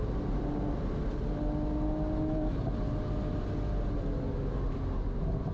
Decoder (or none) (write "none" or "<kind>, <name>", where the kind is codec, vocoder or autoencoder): none